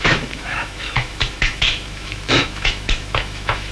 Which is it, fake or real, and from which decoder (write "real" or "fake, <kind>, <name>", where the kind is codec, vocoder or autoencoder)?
fake, autoencoder, DAC-VAE